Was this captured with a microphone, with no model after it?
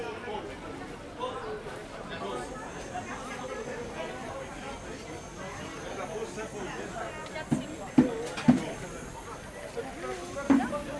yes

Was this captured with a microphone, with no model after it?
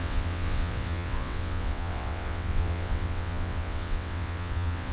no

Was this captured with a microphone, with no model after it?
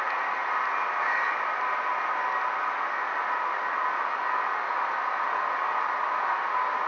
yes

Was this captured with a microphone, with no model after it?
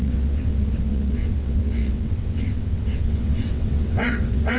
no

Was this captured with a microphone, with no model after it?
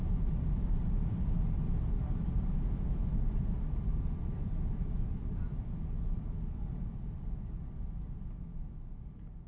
yes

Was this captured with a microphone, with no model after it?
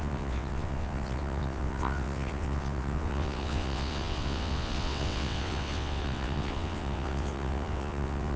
no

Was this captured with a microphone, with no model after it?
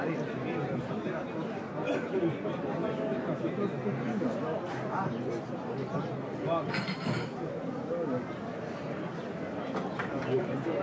yes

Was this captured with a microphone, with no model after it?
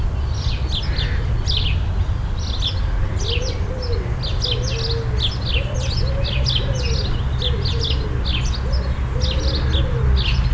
yes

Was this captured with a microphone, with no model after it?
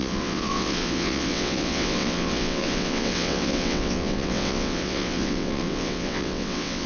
no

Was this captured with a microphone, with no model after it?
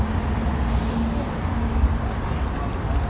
yes